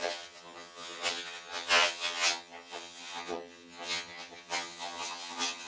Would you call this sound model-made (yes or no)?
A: yes